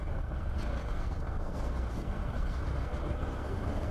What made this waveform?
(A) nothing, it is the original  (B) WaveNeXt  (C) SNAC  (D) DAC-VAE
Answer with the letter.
C